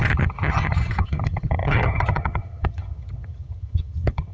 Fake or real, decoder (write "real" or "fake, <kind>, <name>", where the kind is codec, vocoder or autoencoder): fake, vocoder, HiFi-GAN